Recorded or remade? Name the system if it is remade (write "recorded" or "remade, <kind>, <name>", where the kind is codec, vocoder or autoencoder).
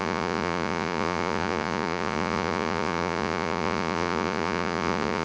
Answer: remade, vocoder, Vocos